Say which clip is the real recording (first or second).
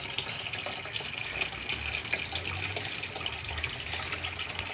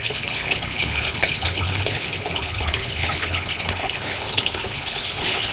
first